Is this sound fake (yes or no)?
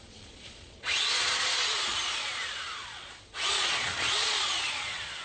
yes